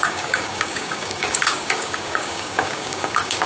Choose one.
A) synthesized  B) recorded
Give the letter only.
A